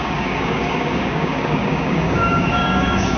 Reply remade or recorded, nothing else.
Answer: remade